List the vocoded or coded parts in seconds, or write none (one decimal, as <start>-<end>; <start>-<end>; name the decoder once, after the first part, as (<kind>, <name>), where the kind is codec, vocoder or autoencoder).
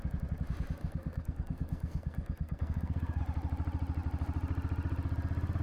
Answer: 0.8-3.2 (codec, SNAC)